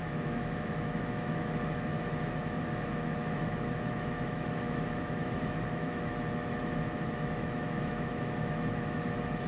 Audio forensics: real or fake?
fake